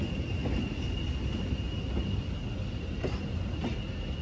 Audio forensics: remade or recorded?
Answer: recorded